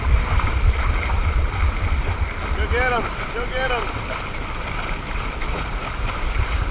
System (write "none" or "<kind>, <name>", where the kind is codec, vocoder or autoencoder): none